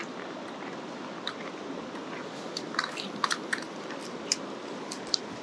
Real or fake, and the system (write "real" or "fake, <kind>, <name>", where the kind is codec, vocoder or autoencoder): real